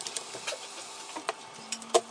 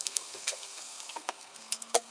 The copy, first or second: second